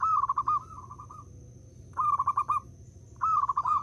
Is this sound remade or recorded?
recorded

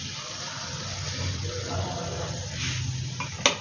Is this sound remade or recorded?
recorded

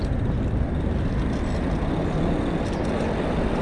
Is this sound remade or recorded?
recorded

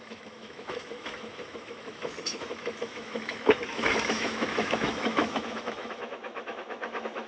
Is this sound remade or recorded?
remade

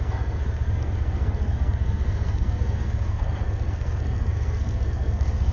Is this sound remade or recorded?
remade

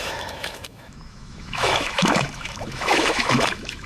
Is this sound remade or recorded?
remade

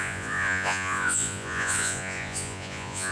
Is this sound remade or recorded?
remade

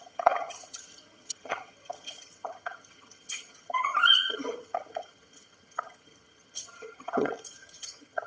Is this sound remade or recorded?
remade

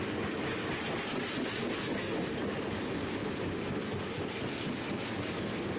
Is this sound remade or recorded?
recorded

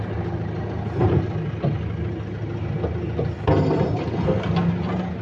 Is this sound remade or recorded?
recorded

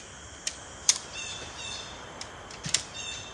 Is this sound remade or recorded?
recorded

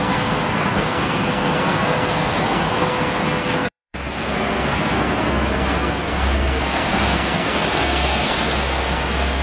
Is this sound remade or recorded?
remade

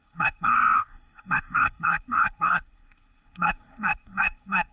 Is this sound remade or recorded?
remade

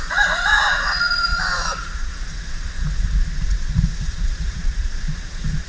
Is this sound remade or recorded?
remade